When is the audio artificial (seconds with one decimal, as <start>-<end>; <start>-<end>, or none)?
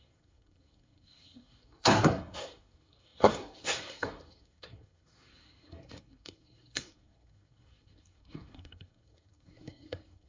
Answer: 0.0-10.3